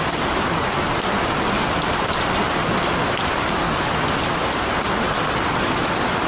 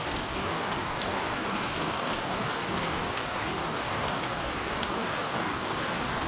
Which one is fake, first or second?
second